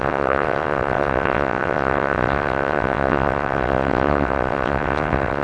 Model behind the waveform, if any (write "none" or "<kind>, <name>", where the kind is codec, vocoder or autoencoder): vocoder, WaveNeXt